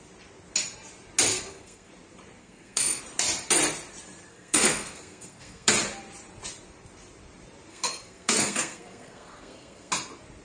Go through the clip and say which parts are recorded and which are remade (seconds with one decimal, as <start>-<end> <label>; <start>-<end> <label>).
0.0-1.3 recorded; 1.3-1.9 remade; 1.9-2.4 recorded; 2.4-3.0 remade; 3.0-4.3 recorded; 4.3-5.7 remade; 5.7-7.7 recorded; 7.7-9.9 remade; 9.9-10.4 recorded